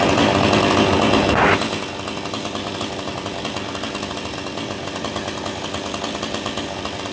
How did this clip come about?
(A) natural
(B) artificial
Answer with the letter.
A